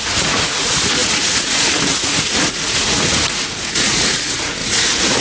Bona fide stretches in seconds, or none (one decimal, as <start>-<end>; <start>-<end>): none